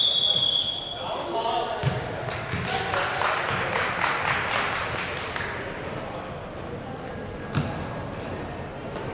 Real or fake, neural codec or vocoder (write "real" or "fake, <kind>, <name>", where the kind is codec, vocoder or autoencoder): real